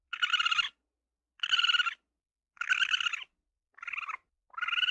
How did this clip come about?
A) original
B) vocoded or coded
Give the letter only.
A